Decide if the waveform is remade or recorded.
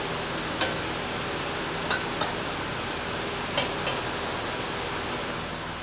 recorded